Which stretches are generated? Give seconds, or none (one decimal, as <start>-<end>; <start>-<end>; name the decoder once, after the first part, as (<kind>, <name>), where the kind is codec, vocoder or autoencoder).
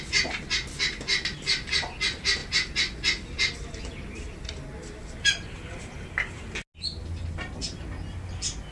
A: none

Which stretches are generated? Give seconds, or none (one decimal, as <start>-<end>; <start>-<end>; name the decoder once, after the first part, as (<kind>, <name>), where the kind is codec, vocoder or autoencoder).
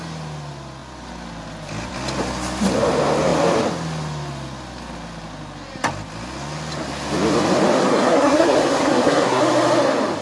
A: 7.9-9.4 (codec, SNAC)